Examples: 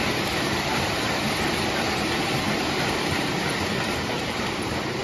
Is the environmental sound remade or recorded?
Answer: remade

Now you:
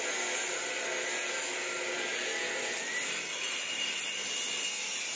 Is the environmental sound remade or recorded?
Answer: recorded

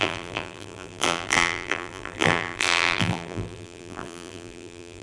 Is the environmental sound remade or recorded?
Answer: remade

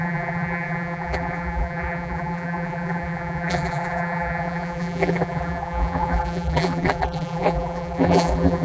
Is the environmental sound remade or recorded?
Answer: remade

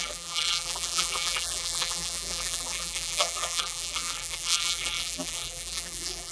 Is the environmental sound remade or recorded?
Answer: remade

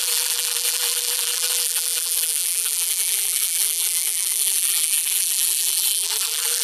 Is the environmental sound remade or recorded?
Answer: remade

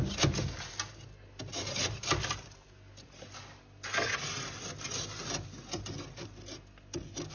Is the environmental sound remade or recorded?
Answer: recorded